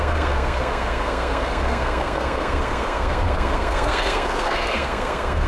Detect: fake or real fake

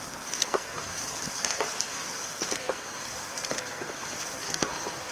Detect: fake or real fake